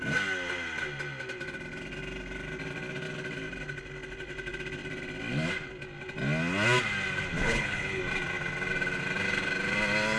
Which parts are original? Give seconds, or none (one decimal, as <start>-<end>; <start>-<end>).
0.0-7.4; 8.0-10.2